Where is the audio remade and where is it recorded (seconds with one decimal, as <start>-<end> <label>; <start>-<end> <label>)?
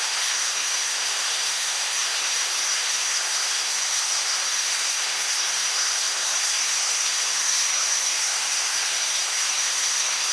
0.0-10.3 remade